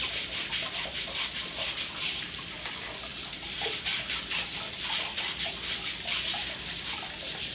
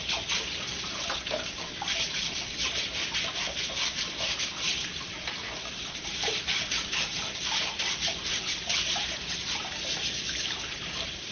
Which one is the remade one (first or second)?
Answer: second